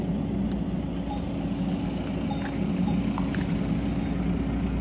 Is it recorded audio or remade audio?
recorded